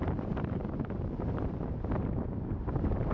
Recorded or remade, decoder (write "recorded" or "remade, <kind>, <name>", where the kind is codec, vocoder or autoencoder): remade, vocoder, BigVGAN v2